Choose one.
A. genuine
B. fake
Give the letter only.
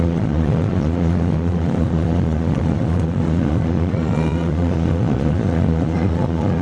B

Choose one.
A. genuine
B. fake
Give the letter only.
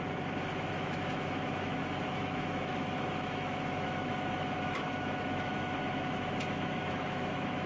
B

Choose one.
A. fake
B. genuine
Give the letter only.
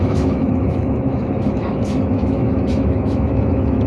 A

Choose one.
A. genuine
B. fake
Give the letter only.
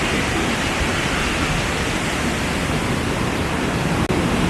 A